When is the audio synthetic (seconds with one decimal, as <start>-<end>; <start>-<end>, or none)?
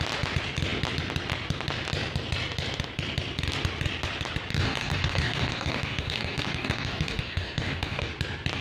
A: 4.5-8.1